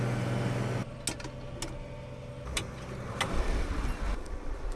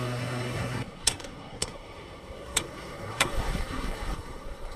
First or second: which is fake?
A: second